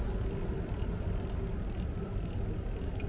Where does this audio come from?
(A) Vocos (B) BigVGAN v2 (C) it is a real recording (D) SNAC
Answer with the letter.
C